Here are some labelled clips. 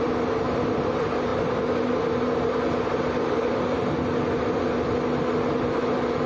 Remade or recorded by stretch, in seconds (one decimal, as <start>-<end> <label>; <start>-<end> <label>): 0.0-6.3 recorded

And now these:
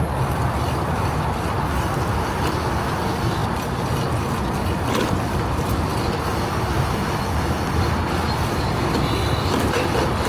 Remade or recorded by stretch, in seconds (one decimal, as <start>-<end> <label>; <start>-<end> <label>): 0.0-10.3 recorded

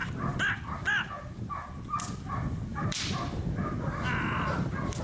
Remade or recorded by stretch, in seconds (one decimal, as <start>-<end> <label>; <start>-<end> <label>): 0.0-2.7 recorded; 2.7-3.8 remade; 3.8-5.0 recorded

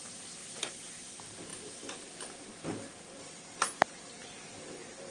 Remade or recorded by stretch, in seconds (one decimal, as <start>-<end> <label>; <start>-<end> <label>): 0.0-0.4 recorded; 0.4-1.1 remade; 1.1-5.1 recorded